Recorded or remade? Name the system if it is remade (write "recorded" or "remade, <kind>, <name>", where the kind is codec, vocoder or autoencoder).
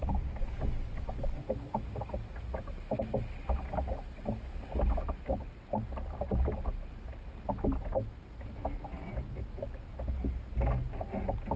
recorded